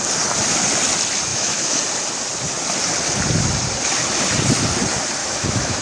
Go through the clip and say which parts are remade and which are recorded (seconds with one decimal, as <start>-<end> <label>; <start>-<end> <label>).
0.0-1.3 recorded; 1.3-1.8 remade; 1.8-5.2 recorded; 5.2-5.8 remade